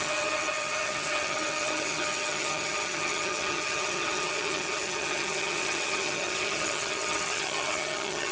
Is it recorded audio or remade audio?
remade